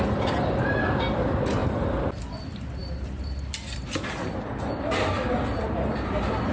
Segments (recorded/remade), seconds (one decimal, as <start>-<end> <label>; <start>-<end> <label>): 0.0-6.5 recorded